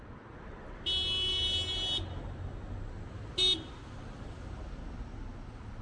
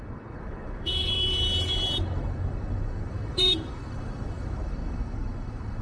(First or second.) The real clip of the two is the first